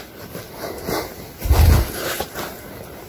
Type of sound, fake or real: real